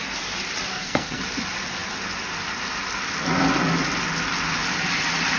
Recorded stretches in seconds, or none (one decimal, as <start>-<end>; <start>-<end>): 0.0-0.7; 1.2-5.4